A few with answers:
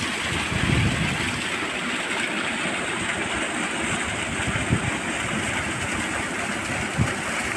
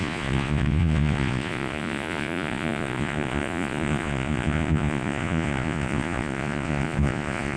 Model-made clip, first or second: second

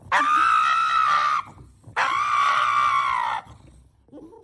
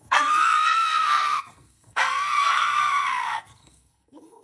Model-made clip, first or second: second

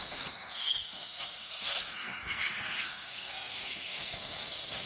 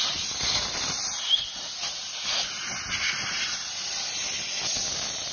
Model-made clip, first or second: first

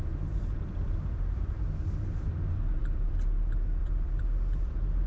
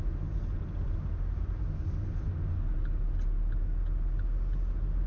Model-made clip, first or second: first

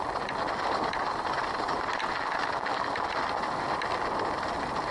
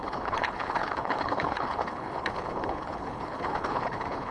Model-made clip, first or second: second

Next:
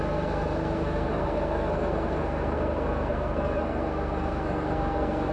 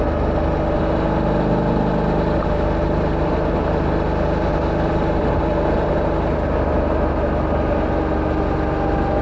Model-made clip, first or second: first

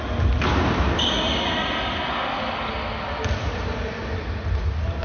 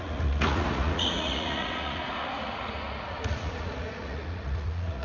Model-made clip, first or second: second